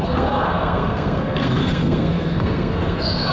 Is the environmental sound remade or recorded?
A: remade